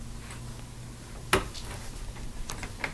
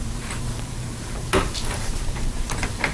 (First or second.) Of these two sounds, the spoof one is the second